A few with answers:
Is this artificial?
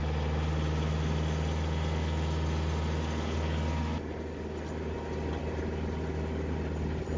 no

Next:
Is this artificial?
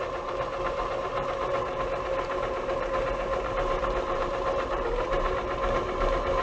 yes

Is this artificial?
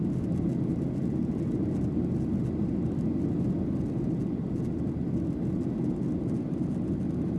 no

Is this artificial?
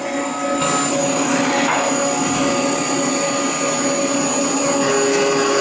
no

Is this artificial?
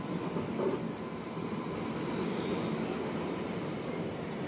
no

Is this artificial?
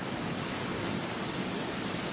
yes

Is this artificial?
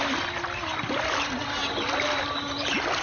no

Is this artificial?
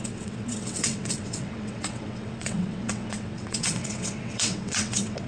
yes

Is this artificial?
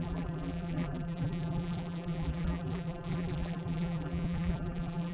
yes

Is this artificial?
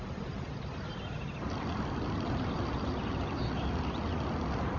no